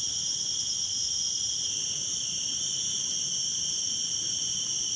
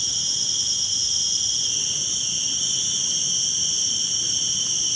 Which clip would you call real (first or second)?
second